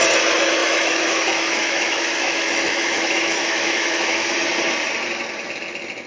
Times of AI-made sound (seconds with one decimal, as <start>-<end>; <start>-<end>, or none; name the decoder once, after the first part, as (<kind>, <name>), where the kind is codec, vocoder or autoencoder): 0.6-4.3 (autoencoder, DAC-VAE)